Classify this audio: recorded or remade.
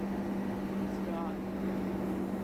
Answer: recorded